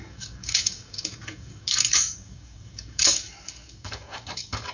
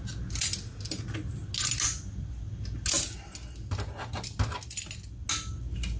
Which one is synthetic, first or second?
first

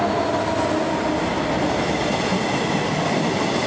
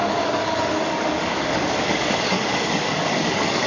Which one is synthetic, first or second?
second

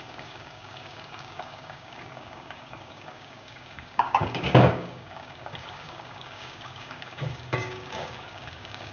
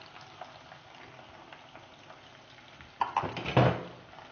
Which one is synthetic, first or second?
first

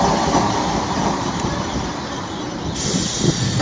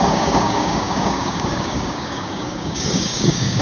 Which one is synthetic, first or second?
second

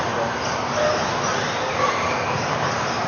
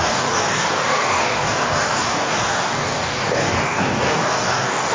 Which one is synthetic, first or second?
second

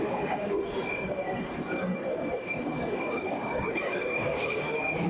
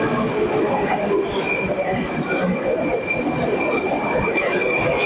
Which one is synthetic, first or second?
first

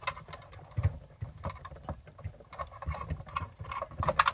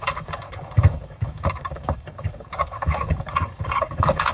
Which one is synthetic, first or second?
second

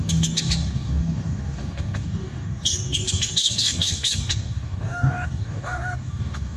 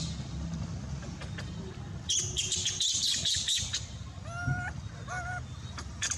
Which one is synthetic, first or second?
first